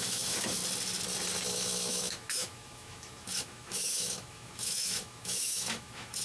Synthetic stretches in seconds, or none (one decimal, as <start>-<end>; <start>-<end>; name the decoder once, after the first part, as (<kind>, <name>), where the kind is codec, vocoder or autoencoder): 0.0-0.6 (autoencoder, DAC-VAE); 1.5-6.2